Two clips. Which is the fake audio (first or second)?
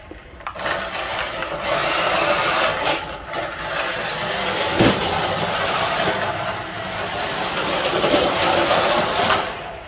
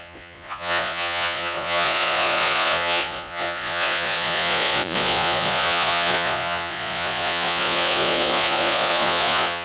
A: second